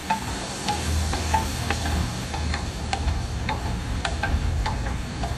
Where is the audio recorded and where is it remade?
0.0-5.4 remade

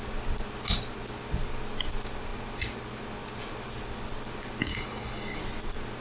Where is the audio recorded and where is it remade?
0.0-4.7 recorded; 4.7-5.4 remade; 5.4-6.0 recorded

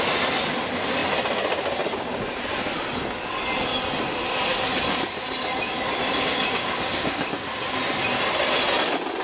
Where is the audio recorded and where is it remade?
0.0-6.3 recorded; 6.3-7.3 remade; 7.3-9.2 recorded

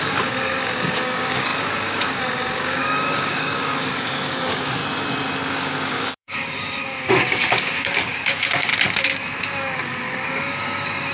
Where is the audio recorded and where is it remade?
0.0-4.8 remade; 4.8-5.5 recorded; 5.5-8.7 remade; 8.7-9.4 recorded; 9.4-11.1 remade